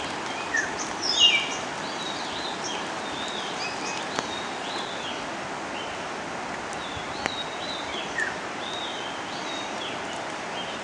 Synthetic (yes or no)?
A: no